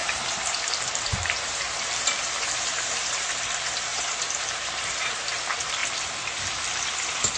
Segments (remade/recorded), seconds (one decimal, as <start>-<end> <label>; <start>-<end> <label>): 0.0-3.3 remade; 3.3-3.9 recorded; 3.9-5.2 remade; 5.2-7.4 recorded